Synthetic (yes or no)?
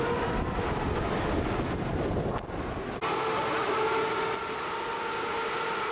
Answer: no